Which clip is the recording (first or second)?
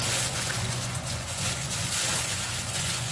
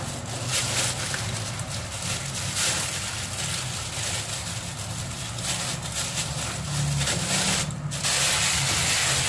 second